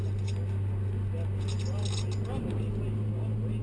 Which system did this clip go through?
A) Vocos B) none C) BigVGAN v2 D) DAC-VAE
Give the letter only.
B